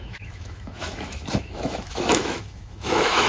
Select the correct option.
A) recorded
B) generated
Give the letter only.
B